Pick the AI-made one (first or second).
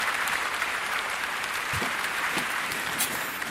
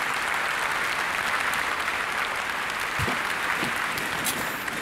first